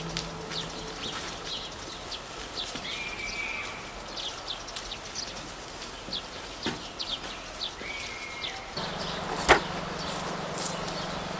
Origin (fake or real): real